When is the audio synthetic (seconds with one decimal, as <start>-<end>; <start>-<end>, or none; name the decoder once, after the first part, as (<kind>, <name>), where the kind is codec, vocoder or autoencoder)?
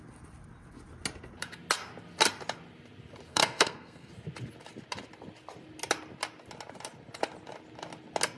3.3-4.1 (codec, SNAC)